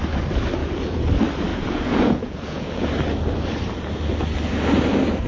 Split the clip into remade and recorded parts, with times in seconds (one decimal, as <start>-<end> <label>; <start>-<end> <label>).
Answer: 0.0-0.6 recorded; 0.6-1.1 remade; 1.1-1.5 recorded; 1.5-2.9 remade; 2.9-5.3 recorded